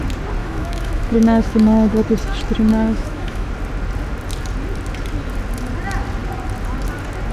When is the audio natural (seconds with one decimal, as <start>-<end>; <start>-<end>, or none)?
0.0-0.4; 2.0-2.7; 3.5-7.3